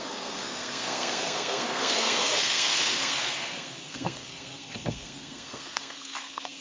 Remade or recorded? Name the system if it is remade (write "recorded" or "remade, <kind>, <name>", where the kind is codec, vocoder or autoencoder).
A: remade, codec, SNAC